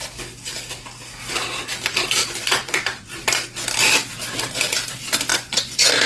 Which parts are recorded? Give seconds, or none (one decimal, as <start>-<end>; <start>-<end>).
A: 0.0-2.2; 3.2-5.3